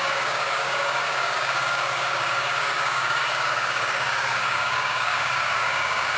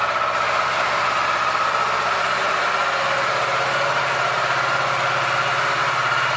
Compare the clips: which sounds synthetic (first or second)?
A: first